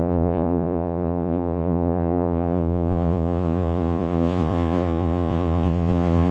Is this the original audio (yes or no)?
no